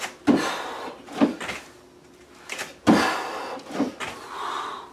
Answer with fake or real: real